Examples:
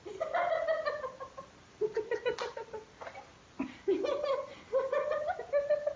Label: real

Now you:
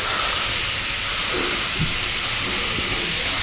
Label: real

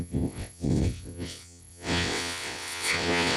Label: fake